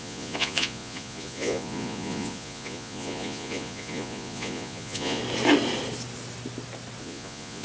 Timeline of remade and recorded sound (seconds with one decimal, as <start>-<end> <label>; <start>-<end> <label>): 0.0-5.2 remade; 5.2-7.0 recorded; 7.0-7.6 remade